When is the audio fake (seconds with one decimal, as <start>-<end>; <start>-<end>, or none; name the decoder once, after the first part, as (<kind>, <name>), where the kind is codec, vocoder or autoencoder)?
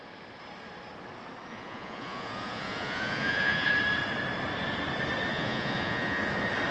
1.5-3.7 (vocoder, Vocos); 5.3-6.3